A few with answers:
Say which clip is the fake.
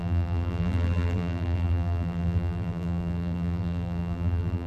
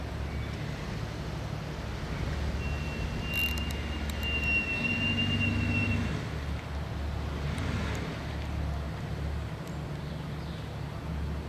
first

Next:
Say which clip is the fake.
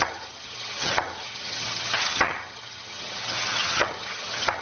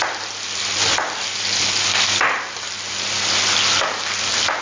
first